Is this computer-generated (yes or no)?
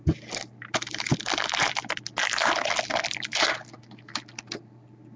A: no